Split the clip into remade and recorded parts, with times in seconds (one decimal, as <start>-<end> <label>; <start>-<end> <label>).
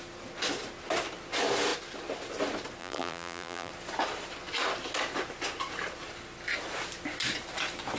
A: 0.0-2.8 recorded; 2.8-3.7 remade; 3.7-8.0 recorded